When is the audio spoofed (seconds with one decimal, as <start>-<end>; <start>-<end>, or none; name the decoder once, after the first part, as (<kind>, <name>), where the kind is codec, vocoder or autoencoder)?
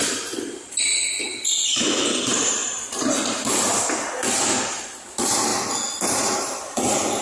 none